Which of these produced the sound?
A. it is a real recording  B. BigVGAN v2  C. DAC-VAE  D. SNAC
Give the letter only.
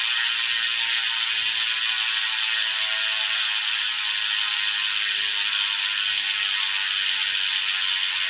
A